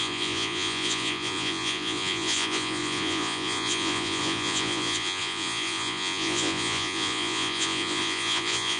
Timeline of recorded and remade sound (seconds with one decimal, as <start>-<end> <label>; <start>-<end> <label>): 0.0-8.8 remade